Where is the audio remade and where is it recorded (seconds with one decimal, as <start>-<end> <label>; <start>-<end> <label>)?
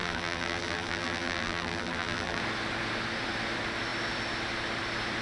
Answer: 0.0-2.4 remade; 2.4-5.2 recorded